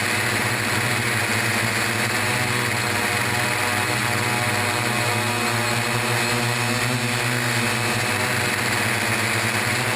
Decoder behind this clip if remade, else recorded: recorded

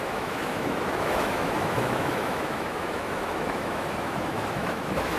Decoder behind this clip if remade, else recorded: remade, autoencoder, DAC-VAE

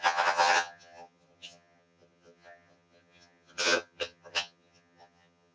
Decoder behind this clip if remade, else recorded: remade, vocoder, HiFi-GAN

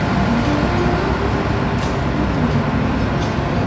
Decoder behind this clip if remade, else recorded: recorded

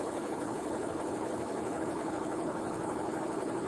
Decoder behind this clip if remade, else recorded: remade, codec, HILCodec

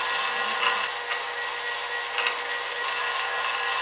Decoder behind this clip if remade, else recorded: recorded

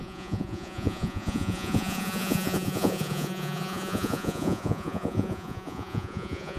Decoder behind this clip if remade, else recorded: remade, vocoder, Vocos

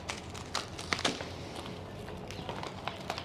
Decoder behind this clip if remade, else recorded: recorded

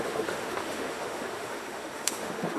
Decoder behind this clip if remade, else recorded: remade, autoencoder, DAC-VAE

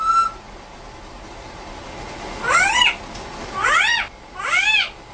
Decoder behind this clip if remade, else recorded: recorded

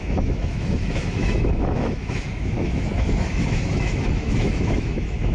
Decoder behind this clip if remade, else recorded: remade, autoencoder, DAC-VAE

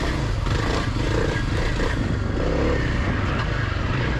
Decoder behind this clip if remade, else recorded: recorded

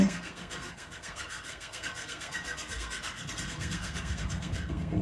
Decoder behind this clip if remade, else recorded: remade, codec, SNAC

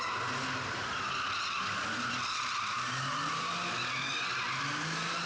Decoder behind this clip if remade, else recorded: recorded